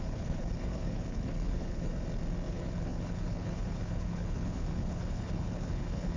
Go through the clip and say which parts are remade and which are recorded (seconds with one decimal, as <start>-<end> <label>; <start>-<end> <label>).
0.0-1.9 remade; 1.9-2.5 recorded; 2.5-6.2 remade